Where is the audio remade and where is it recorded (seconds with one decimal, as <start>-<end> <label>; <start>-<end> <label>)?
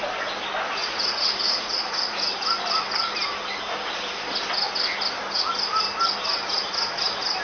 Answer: 0.0-0.8 recorded; 0.8-2.3 remade; 2.3-7.4 recorded